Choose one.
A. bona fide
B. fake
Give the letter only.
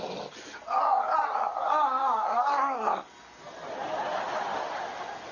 A